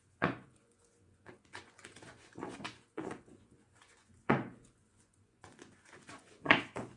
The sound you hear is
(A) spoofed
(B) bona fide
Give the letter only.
A